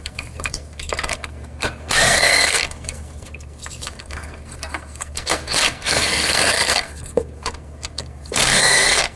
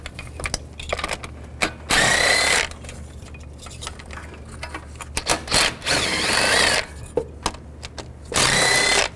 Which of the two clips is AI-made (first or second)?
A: first